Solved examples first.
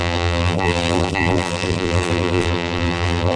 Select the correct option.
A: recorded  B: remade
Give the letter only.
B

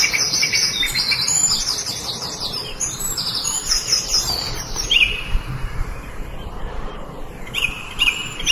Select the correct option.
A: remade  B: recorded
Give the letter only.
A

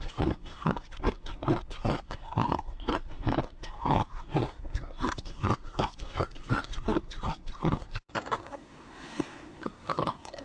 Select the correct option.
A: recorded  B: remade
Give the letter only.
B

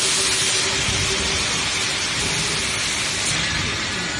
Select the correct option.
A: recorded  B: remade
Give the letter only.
A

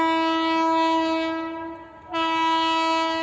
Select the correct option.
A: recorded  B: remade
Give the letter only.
A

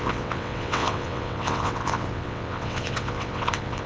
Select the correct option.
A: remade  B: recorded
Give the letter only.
A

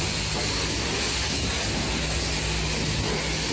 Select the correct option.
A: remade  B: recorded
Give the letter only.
B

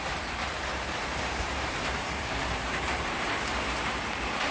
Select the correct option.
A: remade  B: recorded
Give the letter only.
A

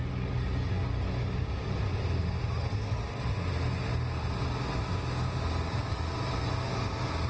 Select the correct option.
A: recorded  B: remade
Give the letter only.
A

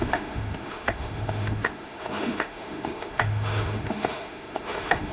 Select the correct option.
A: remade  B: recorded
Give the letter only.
A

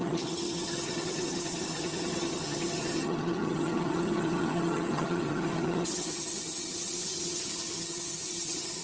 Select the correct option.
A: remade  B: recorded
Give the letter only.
A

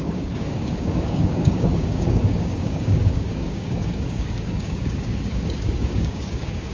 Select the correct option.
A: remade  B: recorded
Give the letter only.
A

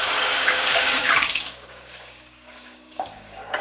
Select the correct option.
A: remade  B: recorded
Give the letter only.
A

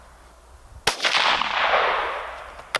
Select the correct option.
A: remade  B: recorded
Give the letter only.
B